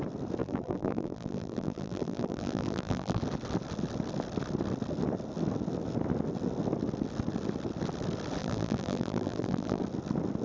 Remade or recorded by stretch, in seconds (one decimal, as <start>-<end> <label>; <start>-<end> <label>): 0.0-0.4 recorded; 0.4-3.2 remade; 3.2-8.4 recorded; 8.4-9.8 remade; 9.8-10.4 recorded